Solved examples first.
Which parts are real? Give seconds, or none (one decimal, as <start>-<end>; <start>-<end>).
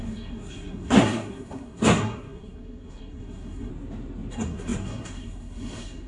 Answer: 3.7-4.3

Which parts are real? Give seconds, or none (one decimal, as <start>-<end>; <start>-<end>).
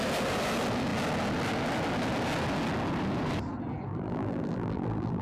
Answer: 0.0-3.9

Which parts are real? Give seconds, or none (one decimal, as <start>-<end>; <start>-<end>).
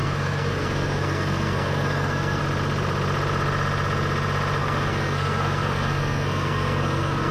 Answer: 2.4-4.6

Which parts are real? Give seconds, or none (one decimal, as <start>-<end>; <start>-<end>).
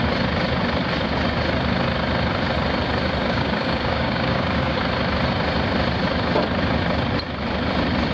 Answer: 0.0-3.2; 4.8-8.1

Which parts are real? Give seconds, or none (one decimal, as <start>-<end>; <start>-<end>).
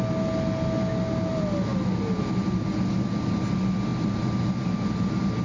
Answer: 0.0-5.4